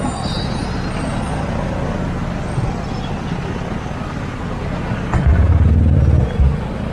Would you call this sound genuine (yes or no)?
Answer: yes